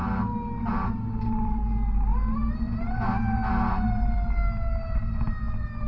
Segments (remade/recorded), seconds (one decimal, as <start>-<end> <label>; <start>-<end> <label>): 0.0-5.9 recorded